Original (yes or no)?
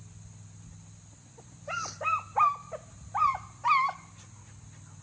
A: yes